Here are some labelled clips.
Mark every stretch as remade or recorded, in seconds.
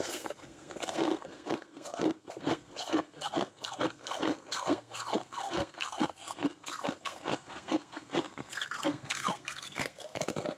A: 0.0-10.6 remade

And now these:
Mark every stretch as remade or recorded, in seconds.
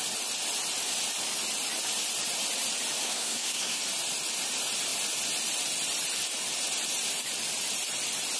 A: 0.0-3.0 recorded; 3.0-3.8 remade; 3.8-8.4 recorded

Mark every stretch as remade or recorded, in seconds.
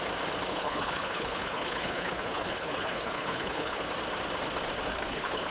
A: 0.0-0.5 recorded; 0.5-3.8 remade; 3.8-4.9 recorded; 4.9-5.5 remade